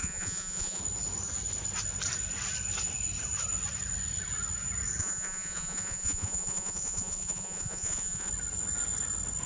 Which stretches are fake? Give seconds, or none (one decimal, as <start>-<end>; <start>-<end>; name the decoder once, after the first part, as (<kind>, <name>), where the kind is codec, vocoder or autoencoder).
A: 0.0-0.8 (vocoder, Vocos); 5.0-8.3